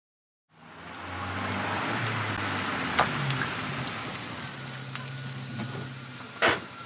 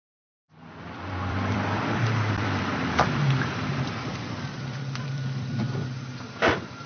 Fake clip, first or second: second